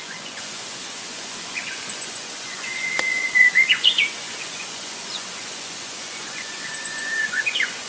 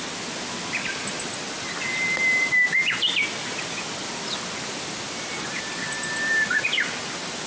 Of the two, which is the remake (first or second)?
first